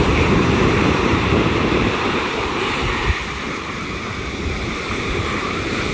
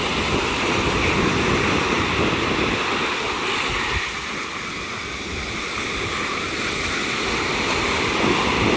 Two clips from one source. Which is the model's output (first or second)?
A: first